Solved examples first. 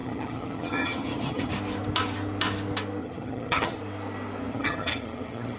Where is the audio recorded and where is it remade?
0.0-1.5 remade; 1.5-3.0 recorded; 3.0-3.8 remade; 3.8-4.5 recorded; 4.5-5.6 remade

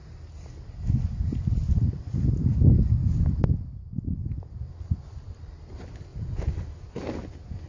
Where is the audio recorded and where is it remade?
0.0-7.7 recorded

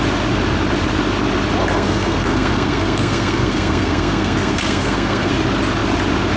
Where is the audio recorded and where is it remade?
0.0-1.6 recorded; 1.6-5.3 remade; 5.3-6.4 recorded